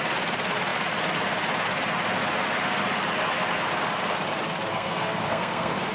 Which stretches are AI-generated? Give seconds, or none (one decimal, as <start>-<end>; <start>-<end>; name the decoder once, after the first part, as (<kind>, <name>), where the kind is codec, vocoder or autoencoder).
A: 4.7-5.9 (codec, SNAC)